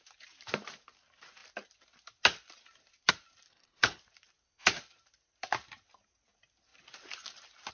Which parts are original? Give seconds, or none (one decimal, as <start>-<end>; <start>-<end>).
0.0-3.5; 4.0-7.7